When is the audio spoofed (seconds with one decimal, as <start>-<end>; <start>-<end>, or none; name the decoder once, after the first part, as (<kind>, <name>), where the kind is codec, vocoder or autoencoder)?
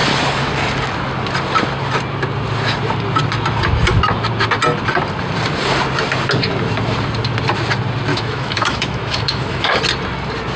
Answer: 8.1-9.8 (autoencoder, DAC-VAE)